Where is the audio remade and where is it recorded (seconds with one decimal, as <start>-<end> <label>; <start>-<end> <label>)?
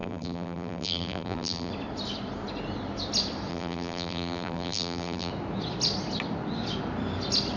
0.0-1.7 remade; 1.7-3.5 recorded; 3.5-5.3 remade; 5.3-7.6 recorded